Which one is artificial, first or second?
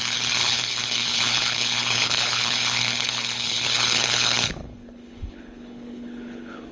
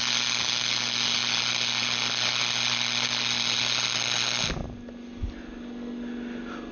first